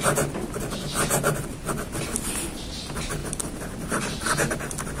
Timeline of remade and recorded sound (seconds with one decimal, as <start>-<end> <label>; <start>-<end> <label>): 0.0-3.2 recorded; 3.2-4.0 remade; 4.0-5.0 recorded